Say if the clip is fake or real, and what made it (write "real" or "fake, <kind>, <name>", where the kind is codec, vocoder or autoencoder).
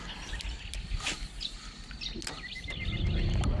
real